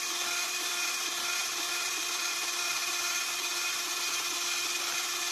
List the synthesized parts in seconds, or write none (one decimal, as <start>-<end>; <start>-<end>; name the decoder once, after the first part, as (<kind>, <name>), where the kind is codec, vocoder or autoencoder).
0.0-3.5 (vocoder, BigVGAN v2); 4.3-5.3